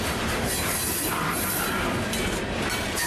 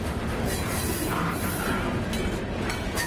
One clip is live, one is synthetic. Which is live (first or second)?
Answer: second